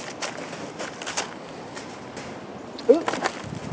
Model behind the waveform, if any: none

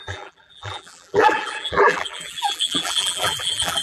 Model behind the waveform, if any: vocoder, BigVGAN v2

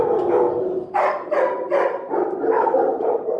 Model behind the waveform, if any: none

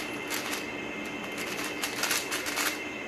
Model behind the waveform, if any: none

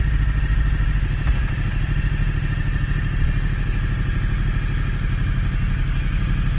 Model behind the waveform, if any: none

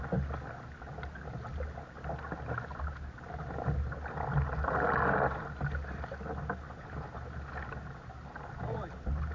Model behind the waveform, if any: none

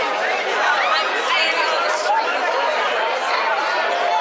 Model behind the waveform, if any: none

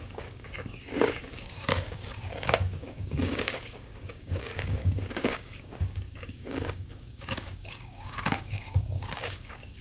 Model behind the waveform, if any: codec, DAC